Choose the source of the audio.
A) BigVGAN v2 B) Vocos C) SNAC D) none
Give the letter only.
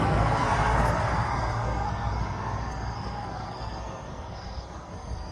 C